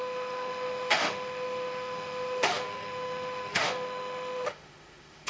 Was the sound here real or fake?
fake